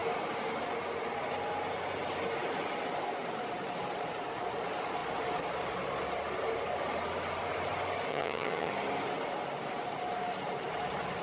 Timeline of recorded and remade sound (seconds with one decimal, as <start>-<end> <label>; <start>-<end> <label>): 0.0-8.1 recorded; 8.1-8.7 remade; 8.7-11.2 recorded